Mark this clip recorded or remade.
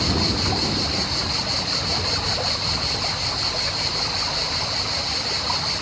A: recorded